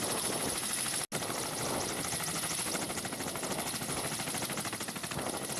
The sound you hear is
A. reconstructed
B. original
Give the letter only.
B